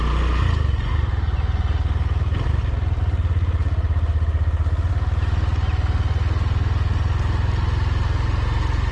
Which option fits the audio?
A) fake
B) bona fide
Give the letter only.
B